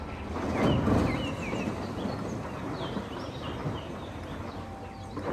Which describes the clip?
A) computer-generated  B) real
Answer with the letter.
B